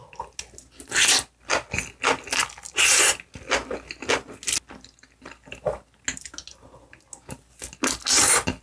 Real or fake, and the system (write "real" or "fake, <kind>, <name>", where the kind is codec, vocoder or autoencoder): real